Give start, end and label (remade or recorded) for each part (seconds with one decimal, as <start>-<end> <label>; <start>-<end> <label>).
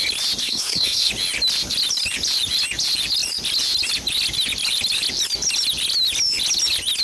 0.0-0.4 recorded; 0.4-1.1 remade; 1.1-7.0 recorded